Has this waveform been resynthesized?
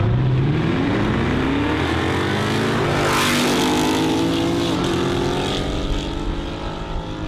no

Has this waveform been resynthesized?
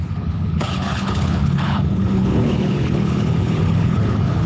yes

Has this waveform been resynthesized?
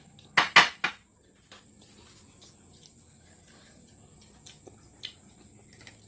no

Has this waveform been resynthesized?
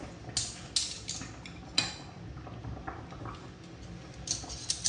no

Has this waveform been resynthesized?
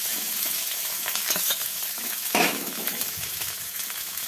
yes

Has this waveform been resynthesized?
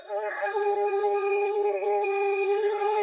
yes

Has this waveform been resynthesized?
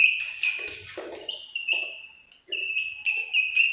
no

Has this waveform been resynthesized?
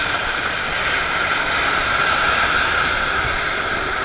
no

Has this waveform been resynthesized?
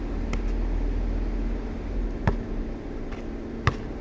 no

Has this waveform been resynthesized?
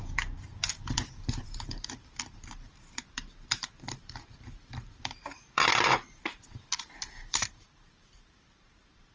yes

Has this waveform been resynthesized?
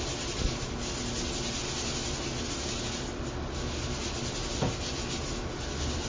no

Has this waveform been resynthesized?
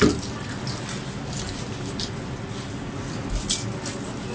no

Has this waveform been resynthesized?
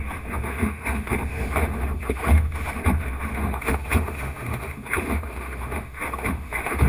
yes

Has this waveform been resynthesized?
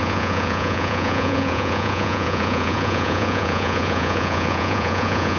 yes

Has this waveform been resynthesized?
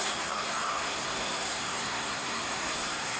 yes